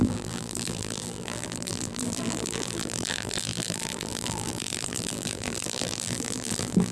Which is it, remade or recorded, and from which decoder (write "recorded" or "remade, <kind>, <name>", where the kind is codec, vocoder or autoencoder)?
remade, vocoder, BigVGAN v2